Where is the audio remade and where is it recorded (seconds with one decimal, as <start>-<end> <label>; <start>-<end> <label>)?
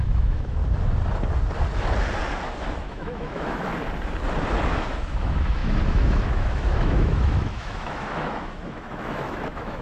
0.0-0.6 remade; 0.6-2.9 recorded; 2.9-3.7 remade; 3.7-4.7 recorded; 4.7-9.8 remade